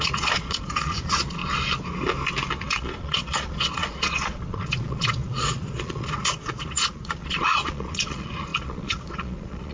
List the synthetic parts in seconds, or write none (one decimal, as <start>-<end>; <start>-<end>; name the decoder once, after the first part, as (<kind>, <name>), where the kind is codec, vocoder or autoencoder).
0.0-1.4 (vocoder, Vocos); 2.6-9.7